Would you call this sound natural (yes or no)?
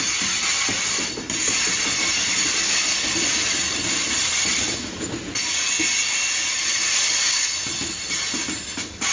yes